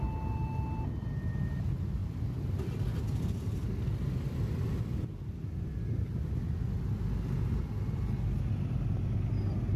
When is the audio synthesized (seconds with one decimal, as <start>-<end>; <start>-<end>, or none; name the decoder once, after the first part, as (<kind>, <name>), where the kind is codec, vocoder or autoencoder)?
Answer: none